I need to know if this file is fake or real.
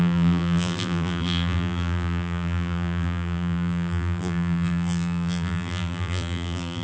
fake